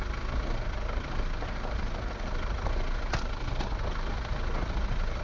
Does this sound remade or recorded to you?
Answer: recorded